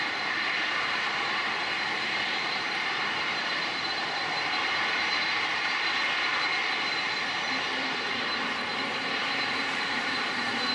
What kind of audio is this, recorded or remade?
remade